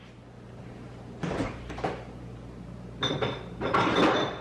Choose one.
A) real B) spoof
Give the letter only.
A